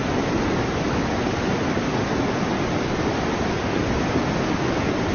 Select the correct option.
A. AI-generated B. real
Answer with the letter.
B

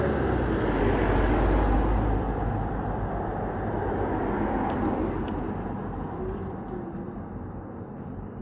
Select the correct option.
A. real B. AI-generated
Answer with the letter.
A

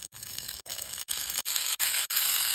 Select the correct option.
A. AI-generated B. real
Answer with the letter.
A